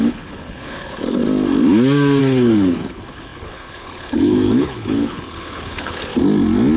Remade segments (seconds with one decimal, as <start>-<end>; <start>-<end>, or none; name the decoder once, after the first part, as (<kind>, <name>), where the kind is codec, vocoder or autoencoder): 0.0-1.2 (codec, HILCodec); 2.2-6.1

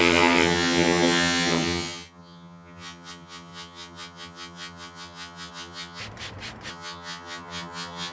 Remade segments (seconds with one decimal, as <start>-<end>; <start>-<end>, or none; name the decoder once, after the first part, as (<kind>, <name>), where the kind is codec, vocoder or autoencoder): 0.0-6.0 (vocoder, HiFi-GAN); 6.7-8.1

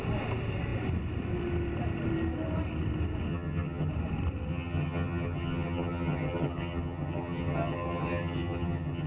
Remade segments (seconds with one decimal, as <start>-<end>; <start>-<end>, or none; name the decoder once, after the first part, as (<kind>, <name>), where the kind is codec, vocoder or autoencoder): 3.3-3.9 (vocoder, HiFi-GAN); 4.5-9.1

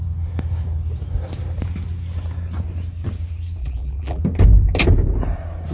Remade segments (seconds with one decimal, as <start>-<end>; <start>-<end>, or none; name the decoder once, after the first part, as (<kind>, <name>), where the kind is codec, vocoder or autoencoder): 3.6-4.2 (vocoder, BigVGAN v2)

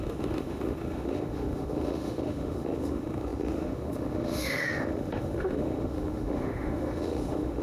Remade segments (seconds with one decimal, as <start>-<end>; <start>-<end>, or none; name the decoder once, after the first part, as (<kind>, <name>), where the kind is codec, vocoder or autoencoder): 0.0-7.6 (autoencoder, DAC-VAE)

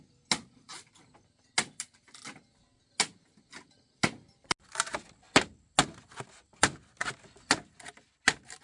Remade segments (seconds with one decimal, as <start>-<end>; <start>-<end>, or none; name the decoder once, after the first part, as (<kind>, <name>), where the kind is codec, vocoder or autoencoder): none

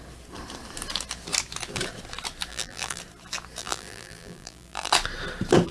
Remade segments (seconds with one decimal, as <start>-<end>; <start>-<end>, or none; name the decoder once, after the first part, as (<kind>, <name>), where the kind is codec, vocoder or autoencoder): 2.5-3.0 (vocoder, BigVGAN v2); 3.6-4.9

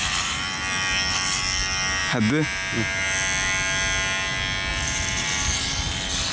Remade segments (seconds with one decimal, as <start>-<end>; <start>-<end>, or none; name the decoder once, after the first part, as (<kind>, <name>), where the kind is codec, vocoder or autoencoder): none